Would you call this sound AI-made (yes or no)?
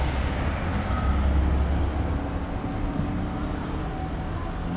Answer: no